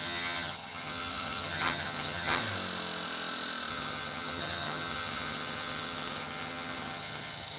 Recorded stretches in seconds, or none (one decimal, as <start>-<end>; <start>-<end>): 2.4-3.7